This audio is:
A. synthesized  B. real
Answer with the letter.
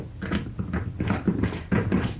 B